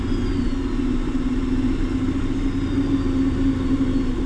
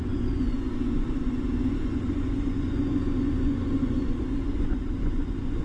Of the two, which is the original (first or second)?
first